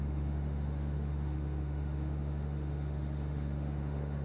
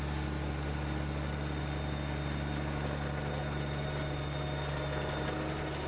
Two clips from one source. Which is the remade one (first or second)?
first